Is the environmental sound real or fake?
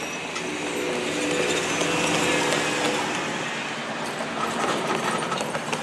real